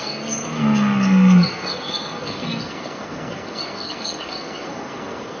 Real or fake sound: fake